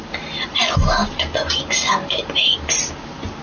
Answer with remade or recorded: recorded